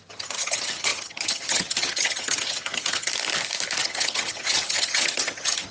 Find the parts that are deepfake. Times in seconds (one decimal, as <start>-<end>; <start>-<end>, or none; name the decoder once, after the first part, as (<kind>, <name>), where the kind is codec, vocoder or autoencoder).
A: 0.0-3.1 (vocoder, HiFi-GAN); 3.8-5.7